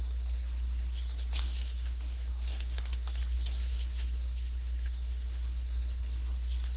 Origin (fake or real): fake